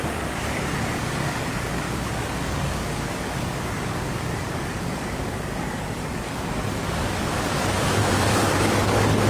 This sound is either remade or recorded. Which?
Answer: remade